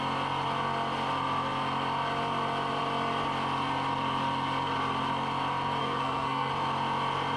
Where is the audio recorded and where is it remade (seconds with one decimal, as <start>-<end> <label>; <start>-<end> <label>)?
0.0-5.8 recorded; 5.8-6.5 remade; 6.5-7.4 recorded